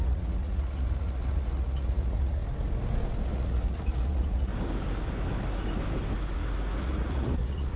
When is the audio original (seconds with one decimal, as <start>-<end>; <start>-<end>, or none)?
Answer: 2.4-3.3; 4.5-6.8